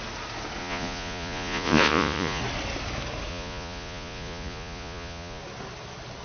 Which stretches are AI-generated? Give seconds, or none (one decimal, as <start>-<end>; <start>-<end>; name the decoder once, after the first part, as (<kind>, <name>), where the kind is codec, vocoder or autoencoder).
0.6-2.4 (vocoder, Vocos); 3.3-5.4